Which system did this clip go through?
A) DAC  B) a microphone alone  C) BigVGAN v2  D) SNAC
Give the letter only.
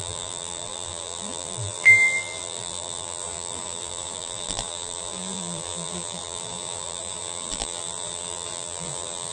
C